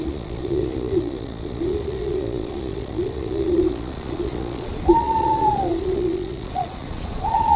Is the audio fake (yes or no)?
yes